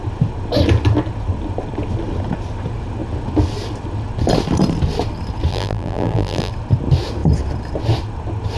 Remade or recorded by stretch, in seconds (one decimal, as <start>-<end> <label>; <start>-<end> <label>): 0.0-5.5 recorded; 5.5-6.5 remade; 6.5-8.6 recorded